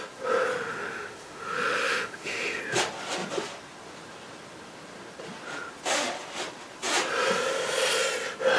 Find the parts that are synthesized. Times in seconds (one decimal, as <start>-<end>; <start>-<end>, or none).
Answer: 0.5-2.6